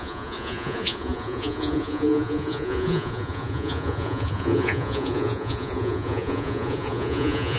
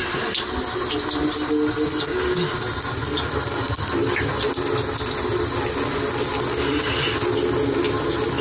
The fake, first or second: first